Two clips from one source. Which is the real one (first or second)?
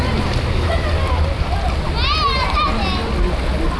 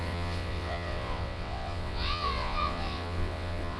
first